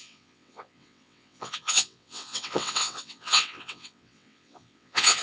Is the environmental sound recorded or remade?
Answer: remade